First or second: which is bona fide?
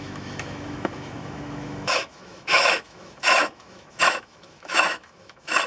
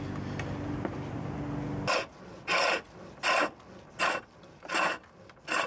second